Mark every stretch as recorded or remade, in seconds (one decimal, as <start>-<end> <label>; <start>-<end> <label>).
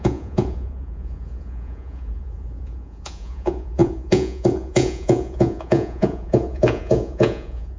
0.0-7.8 remade